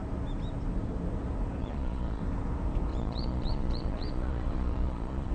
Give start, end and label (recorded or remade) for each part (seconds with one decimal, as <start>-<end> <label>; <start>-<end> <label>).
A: 0.0-1.6 recorded; 1.6-2.2 remade; 2.2-2.9 recorded; 2.9-5.3 remade